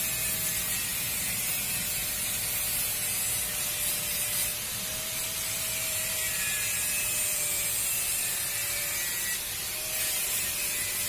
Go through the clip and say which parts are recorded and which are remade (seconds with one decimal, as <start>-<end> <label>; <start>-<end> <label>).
0.0-0.9 recorded; 0.9-1.4 remade; 1.4-2.0 recorded; 2.0-2.7 remade; 2.7-4.5 recorded; 4.5-9.0 remade; 9.0-11.1 recorded